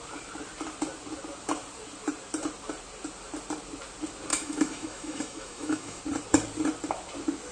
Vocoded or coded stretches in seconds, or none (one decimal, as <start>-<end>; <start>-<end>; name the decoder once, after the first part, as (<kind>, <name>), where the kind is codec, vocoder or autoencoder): 4.3-6.0 (autoencoder, DAC-VAE)